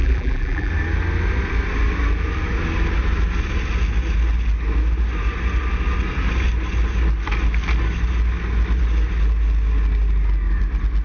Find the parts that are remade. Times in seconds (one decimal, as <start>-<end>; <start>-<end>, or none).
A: 0.0-0.7